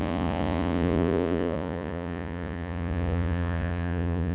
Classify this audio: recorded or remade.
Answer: remade